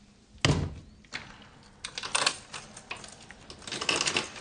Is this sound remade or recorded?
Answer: recorded